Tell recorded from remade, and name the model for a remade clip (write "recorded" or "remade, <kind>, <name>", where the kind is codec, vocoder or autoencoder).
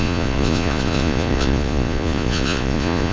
remade, vocoder, Vocos